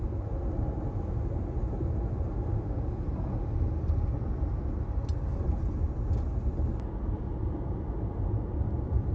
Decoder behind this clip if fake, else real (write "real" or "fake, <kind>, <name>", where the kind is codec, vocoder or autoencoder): real